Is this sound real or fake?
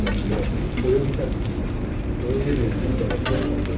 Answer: real